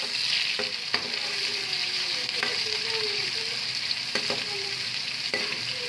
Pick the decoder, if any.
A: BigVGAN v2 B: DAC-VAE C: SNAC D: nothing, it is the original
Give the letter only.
D